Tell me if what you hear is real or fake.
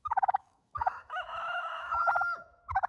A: fake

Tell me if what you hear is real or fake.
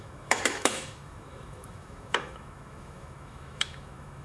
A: fake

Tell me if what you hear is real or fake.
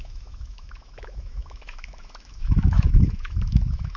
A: fake